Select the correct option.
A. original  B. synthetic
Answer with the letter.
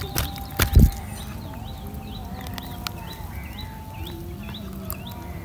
A